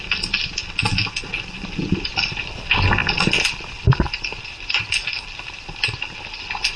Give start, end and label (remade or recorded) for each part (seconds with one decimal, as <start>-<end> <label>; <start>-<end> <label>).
0.0-6.8 recorded